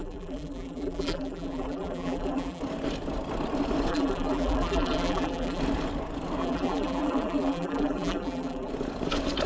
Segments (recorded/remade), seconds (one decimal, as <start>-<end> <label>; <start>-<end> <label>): 0.0-2.6 remade; 2.6-3.9 recorded; 3.9-5.6 remade; 5.6-6.4 recorded; 6.4-8.7 remade; 8.7-9.5 recorded